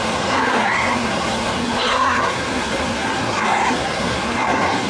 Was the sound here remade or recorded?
remade